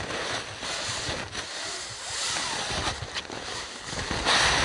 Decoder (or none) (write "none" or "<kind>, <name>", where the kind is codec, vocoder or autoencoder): none